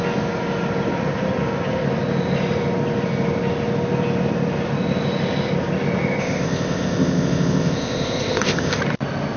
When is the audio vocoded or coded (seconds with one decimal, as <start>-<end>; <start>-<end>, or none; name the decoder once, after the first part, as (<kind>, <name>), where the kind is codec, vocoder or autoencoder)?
6.2-8.8 (codec, ZipCodec)

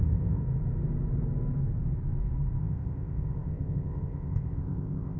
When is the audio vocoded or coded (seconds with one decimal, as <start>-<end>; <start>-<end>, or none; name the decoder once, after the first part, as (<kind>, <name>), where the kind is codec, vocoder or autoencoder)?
0.0-0.4 (codec, ZipCodec); 2.6-5.2

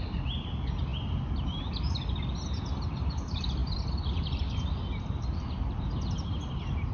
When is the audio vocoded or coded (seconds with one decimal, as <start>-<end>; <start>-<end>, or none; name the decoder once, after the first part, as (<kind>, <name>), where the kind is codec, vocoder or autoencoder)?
none

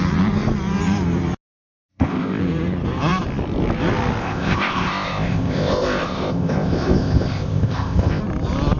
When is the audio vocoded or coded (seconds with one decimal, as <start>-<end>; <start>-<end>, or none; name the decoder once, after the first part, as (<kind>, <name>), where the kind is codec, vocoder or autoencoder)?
1.9-2.4 (codec, ZipCodec); 4.2-8.2

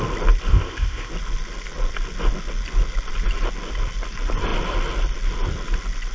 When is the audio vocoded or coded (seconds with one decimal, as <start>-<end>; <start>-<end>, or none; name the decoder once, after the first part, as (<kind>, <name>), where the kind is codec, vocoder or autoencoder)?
0.5-1.1 (codec, ZipCodec)

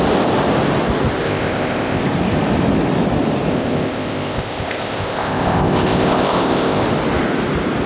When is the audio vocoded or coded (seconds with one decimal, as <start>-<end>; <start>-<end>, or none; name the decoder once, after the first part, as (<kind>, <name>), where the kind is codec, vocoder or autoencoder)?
1.2-2.0 (codec, ZipCodec); 3.5-6.8

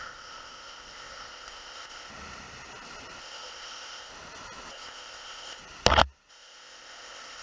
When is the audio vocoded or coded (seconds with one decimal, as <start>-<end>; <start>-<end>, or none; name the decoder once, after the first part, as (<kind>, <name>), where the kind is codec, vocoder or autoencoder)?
0.0-2.1 (codec, ZipCodec); 3.2-4.1; 4.7-5.6; 6.3-7.4